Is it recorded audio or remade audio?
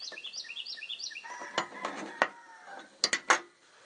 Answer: recorded